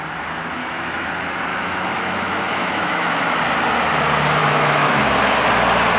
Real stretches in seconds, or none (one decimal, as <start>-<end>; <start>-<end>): 0.0-0.6; 1.1-1.5; 3.2-4.4; 5.0-6.0